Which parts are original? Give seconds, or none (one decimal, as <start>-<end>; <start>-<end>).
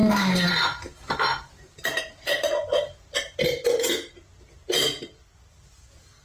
0.5-6.2